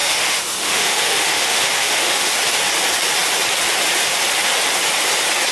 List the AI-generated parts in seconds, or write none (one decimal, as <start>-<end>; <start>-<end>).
0.0-2.3